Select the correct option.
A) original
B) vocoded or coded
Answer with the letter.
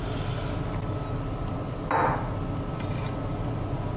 A